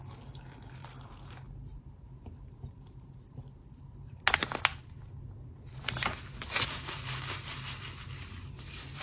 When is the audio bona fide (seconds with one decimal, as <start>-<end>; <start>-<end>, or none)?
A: 0.0-0.8; 4.2-9.0